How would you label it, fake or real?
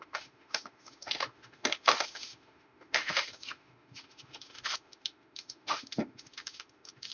fake